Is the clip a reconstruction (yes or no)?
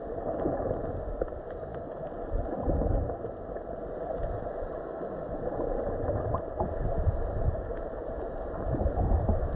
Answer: yes